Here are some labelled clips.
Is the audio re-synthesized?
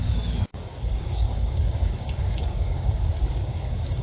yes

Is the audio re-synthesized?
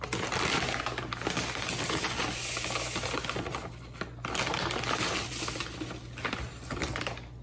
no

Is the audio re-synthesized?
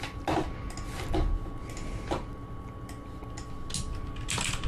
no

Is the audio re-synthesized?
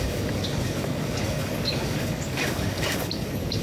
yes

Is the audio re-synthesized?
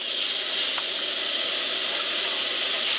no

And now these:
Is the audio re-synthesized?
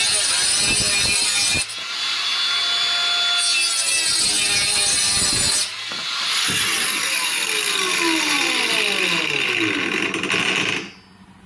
no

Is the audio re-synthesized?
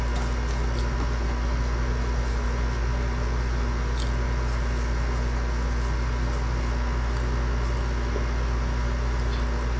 no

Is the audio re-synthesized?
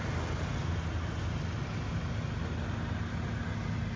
no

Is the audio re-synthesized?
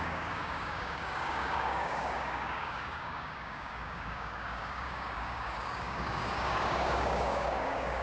yes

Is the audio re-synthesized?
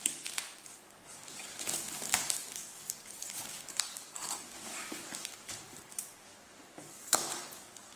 yes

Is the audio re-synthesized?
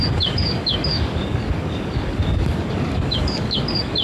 yes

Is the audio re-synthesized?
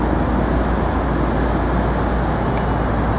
no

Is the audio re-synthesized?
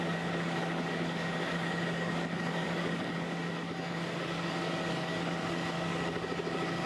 yes